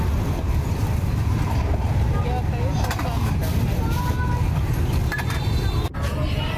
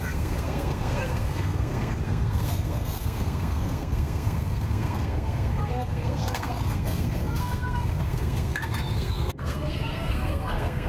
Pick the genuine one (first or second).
first